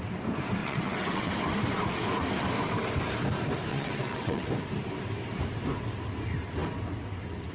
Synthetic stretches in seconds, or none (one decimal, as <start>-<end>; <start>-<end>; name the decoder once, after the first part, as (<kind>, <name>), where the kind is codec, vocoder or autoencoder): 0.6-1.3 (vocoder, WaveNeXt); 3.7-4.5